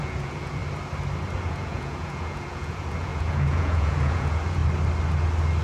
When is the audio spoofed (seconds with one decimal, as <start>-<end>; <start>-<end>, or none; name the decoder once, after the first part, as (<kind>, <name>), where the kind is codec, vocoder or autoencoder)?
0.0-0.6 (vocoder, Vocos); 1.4-4.6